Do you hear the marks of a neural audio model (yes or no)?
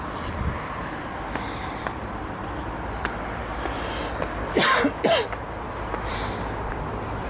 no